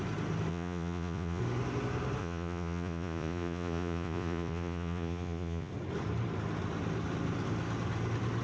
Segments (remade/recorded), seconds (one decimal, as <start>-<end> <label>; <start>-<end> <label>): 0.0-0.5 recorded; 0.5-1.4 remade; 1.4-2.2 recorded; 2.2-5.7 remade; 5.7-8.4 recorded